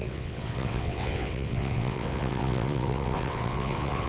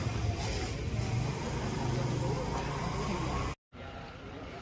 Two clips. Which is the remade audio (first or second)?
first